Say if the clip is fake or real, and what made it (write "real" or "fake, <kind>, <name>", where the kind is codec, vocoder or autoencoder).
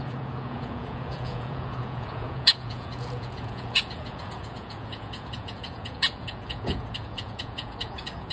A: fake, vocoder, Vocos